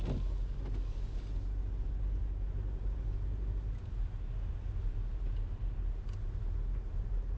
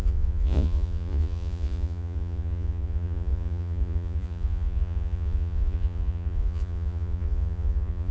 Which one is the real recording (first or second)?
first